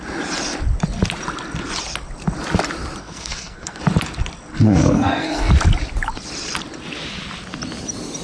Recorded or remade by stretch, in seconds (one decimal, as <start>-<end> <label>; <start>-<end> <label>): 0.0-3.0 recorded; 3.0-3.8 remade; 3.8-4.5 recorded; 4.5-5.5 remade; 5.5-8.2 recorded